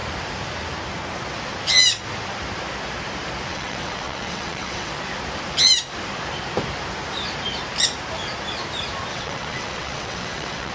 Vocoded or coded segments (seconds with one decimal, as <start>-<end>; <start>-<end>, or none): 3.5-4.9; 9.1-10.7

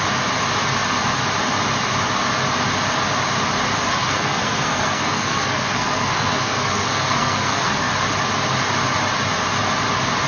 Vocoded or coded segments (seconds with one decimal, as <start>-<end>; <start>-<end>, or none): 3.9-7.9